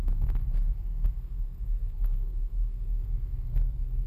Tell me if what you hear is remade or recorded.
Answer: remade